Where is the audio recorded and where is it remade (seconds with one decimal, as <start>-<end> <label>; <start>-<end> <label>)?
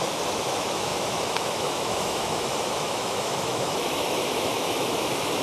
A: 0.0-5.4 remade